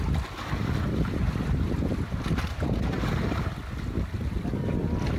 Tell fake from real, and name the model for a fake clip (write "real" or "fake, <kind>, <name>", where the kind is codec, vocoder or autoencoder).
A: real